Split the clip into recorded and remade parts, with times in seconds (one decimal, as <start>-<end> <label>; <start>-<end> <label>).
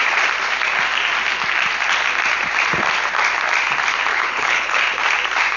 0.0-4.1 recorded; 4.1-4.8 remade; 4.8-5.6 recorded